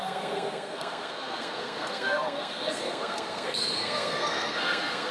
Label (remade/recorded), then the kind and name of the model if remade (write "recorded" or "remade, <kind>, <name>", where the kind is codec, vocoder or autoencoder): remade, codec, SNAC